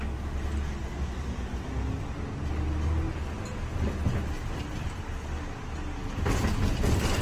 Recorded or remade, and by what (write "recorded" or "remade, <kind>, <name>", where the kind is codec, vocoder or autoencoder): recorded